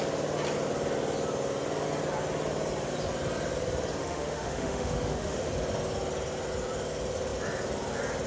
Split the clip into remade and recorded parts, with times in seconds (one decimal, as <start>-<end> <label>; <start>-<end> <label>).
0.0-4.0 recorded; 4.0-5.5 remade; 5.5-8.3 recorded